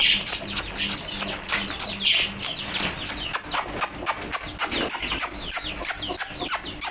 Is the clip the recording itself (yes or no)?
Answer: yes